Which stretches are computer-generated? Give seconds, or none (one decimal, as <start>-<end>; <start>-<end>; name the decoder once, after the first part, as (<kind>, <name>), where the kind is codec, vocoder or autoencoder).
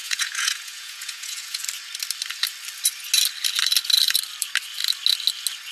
0.0-1.6 (vocoder, Vocos)